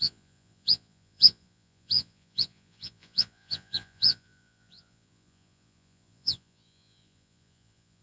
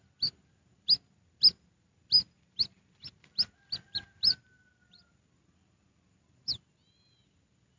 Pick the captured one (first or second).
second